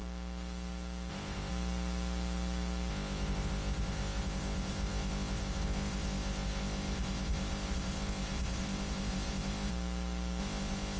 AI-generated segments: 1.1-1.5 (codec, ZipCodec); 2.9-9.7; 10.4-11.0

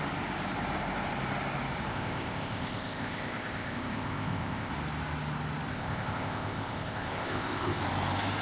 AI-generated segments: 1.9-4.7 (codec, ZipCodec); 5.7-7.8

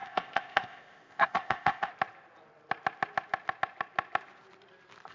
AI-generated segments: 0.0-1.9 (codec, ZipCodec)

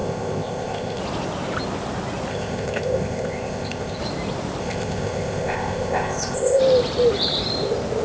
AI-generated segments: 0.0-1.0 (codec, ZipCodec); 2.3-4.0; 4.6-6.6

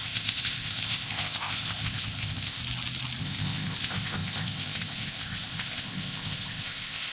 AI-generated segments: 0.0-2.6 (codec, ZipCodec); 3.2-7.1

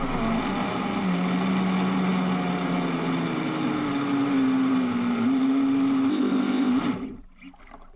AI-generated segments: 6.1-6.7 (codec, ZipCodec)

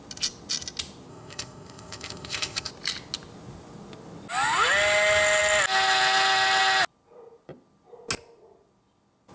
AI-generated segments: 1.1-2.7 (codec, ZipCodec)

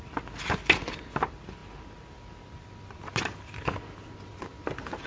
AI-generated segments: none